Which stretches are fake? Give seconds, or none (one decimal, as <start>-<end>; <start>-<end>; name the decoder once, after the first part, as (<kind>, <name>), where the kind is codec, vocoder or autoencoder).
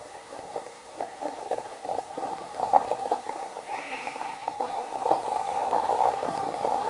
0.0-6.9 (codec, SNAC)